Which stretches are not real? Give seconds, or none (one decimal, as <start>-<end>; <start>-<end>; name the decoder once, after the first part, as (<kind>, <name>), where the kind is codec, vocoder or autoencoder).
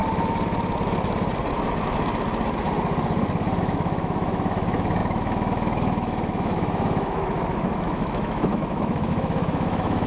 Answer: 3.6-10.1 (autoencoder, DAC-VAE)